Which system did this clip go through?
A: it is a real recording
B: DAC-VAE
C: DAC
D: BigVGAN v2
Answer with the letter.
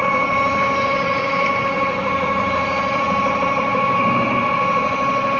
A